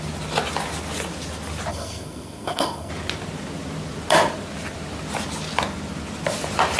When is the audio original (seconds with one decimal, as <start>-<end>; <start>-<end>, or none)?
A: 0.0-1.7; 2.9-6.8